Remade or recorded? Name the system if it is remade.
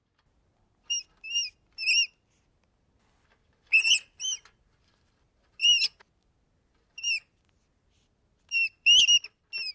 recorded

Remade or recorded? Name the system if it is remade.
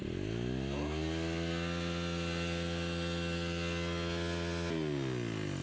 recorded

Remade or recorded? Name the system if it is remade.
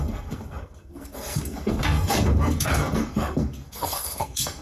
remade, codec, SNAC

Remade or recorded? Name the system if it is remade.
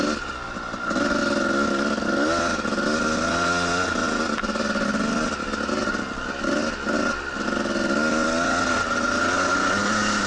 recorded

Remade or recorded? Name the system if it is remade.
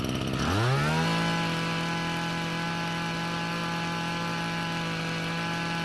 recorded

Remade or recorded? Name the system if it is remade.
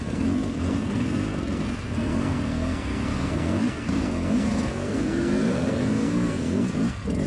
remade, codec, SNAC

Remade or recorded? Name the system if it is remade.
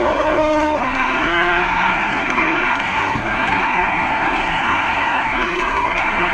remade, codec, SNAC